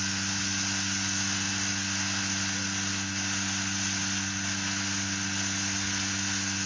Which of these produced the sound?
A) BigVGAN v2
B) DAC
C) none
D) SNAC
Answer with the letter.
C